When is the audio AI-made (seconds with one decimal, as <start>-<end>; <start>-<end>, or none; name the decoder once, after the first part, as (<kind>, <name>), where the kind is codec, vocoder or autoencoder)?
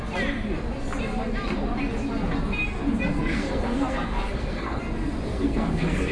3.1-4.8 (codec, SNAC); 5.3-6.1